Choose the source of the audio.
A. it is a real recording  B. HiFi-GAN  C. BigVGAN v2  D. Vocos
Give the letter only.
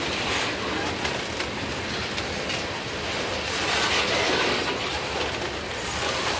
A